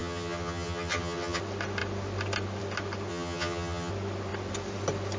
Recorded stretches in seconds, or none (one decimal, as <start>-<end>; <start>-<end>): 1.4-3.1; 3.9-5.2